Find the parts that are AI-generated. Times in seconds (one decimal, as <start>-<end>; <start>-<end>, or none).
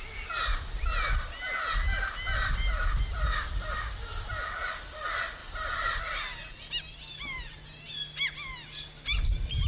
5.4-6.0